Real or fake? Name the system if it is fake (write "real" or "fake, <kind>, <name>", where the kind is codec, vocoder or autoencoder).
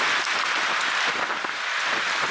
real